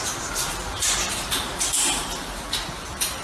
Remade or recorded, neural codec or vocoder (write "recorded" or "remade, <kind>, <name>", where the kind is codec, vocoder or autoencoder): remade, vocoder, BigVGAN v2